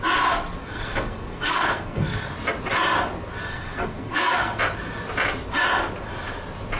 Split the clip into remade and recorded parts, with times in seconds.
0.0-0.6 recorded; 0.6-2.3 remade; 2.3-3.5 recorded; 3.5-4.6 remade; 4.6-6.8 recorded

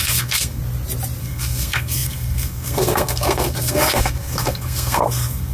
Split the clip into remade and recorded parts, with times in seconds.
0.0-0.6 remade; 0.6-1.2 recorded; 1.2-5.5 remade

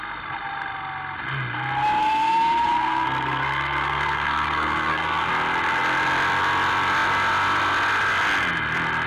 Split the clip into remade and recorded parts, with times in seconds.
0.0-2.0 recorded; 2.0-5.3 remade; 5.3-9.1 recorded

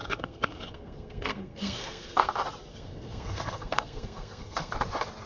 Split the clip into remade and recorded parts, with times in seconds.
0.0-2.3 remade; 2.3-2.7 recorded; 2.7-4.7 remade; 4.7-5.3 recorded

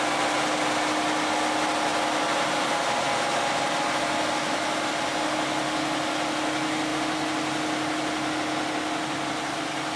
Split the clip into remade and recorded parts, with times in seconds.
0.0-10.0 recorded

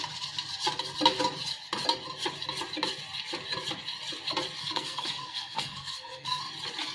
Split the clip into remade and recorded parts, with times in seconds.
0.0-4.6 recorded; 4.6-6.4 remade; 6.4-6.9 recorded

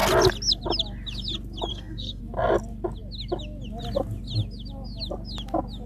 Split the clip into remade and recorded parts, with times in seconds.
0.0-1.7 recorded; 1.7-2.2 remade; 2.2-5.9 recorded